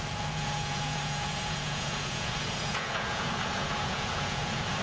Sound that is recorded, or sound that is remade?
remade